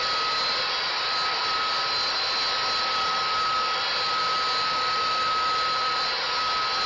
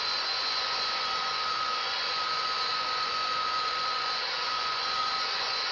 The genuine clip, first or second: first